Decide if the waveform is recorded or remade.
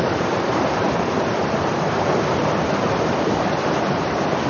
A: remade